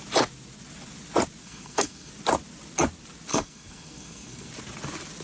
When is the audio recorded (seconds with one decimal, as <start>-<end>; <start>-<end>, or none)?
0.0-1.4; 2.1-3.3; 4.5-5.2